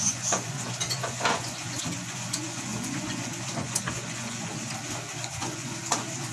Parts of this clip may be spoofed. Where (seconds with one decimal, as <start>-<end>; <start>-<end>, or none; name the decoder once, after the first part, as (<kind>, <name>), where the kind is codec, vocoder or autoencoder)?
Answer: 0.0-4.5 (vocoder, Vocos); 5.2-6.3